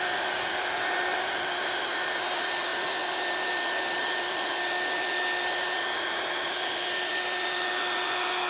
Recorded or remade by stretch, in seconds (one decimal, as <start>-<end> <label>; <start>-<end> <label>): 0.0-8.5 recorded